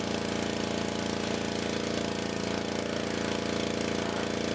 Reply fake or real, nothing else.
real